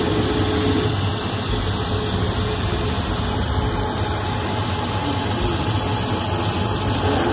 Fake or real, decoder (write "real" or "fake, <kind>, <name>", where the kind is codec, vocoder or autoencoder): real